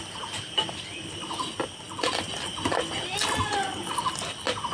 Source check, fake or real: real